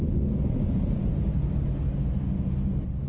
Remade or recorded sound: recorded